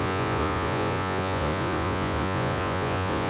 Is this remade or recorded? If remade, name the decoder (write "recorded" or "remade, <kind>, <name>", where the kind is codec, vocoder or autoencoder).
remade, vocoder, Vocos